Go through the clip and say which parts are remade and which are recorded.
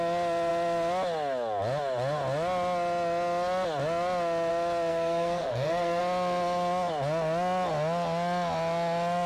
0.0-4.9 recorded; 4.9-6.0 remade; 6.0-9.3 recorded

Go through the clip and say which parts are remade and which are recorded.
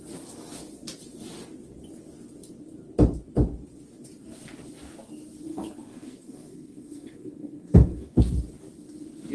0.0-5.5 recorded; 5.5-8.2 remade; 8.2-9.3 recorded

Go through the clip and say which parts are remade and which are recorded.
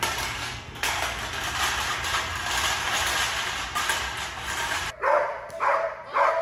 0.0-0.4 recorded; 0.4-1.2 remade; 1.2-6.4 recorded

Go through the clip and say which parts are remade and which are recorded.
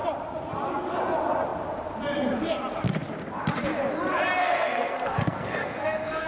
0.0-4.4 recorded; 4.4-6.3 remade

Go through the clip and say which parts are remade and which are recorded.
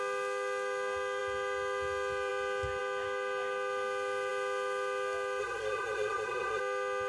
0.0-5.4 recorded; 5.4-6.6 remade; 6.6-7.1 recorded